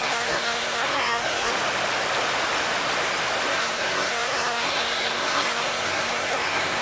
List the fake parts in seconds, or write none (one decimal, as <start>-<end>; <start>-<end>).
0.0-1.5; 3.5-6.8